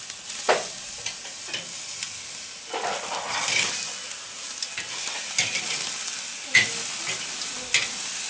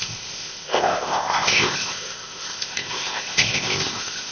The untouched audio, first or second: first